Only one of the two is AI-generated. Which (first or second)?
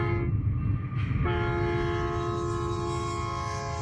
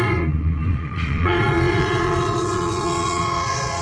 second